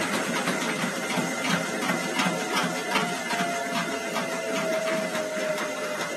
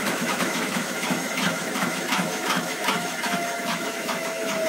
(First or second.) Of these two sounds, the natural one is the first